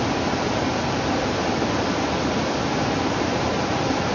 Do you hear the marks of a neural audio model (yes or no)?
no